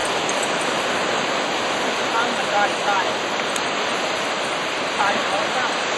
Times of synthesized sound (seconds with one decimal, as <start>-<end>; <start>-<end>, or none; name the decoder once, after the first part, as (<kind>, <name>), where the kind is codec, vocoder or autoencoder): none